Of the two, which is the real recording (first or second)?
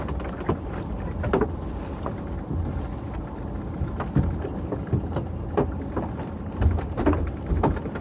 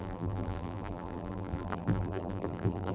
first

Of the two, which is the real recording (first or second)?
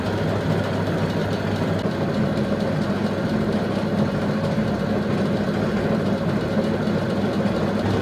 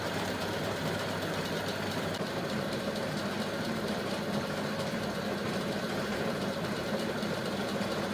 first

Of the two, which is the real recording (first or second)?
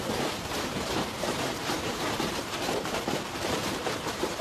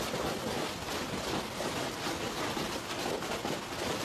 second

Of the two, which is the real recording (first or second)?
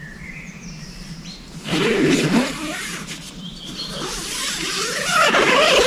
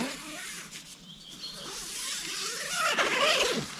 second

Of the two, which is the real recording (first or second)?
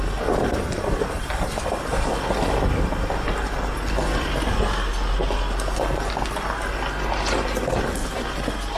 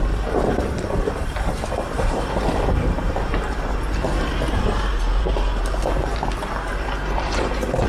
first